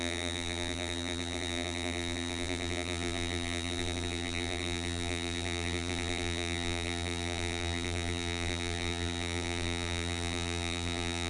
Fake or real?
fake